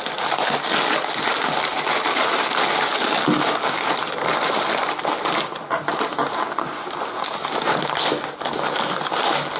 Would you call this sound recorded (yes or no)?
yes